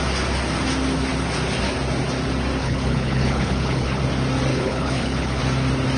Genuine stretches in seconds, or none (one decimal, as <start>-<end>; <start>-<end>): 0.0-2.6; 4.0-4.5; 5.4-6.0